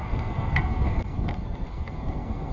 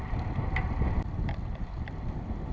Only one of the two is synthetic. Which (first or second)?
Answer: first